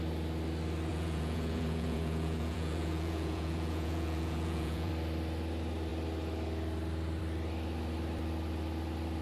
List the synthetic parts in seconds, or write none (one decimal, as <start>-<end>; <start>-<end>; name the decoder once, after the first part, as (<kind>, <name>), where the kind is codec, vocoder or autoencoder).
0.9-4.9 (vocoder, Vocos)